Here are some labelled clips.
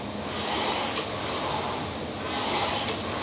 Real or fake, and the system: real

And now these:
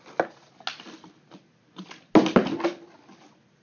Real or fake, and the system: real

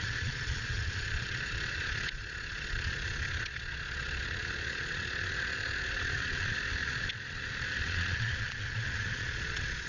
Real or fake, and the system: fake, vocoder, Vocos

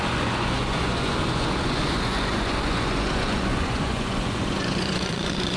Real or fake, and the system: fake, vocoder, Vocos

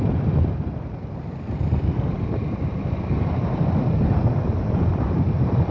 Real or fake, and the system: fake, vocoder, BigVGAN v2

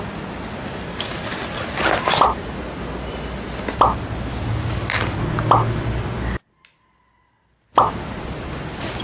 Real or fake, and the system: real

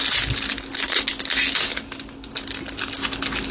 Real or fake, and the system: real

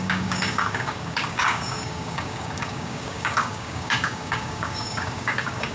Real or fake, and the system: fake, codec, DAC